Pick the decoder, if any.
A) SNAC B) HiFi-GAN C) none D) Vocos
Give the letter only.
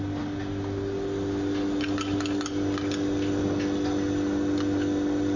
C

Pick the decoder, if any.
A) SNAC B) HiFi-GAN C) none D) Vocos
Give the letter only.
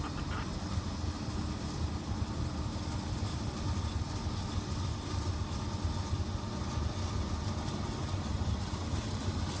C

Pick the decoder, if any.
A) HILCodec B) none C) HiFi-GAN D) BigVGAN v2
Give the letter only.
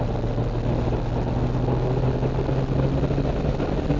B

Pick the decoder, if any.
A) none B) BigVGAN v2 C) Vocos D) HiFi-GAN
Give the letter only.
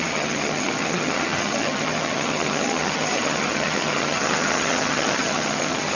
D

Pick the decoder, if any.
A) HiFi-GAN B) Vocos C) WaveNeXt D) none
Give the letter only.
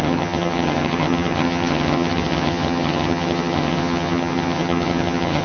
A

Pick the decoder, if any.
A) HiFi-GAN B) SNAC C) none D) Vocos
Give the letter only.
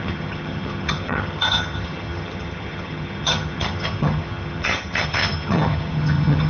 A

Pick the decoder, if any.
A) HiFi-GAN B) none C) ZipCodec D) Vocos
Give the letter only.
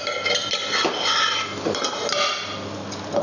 B